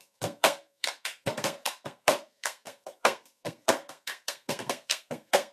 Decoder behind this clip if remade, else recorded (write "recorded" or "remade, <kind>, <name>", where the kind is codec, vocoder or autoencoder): remade, codec, SNAC